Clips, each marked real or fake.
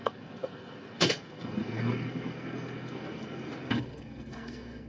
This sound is fake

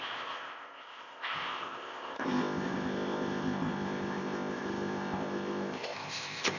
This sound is fake